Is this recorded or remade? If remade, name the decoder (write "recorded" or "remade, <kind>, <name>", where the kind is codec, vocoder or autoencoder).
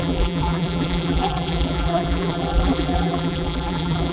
remade, vocoder, BigVGAN v2